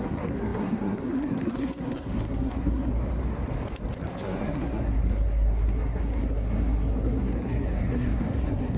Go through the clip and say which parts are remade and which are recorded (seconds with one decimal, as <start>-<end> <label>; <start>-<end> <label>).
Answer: 0.0-2.9 remade; 2.9-4.0 recorded; 4.0-8.8 remade